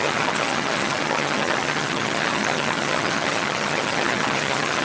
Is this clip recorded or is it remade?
remade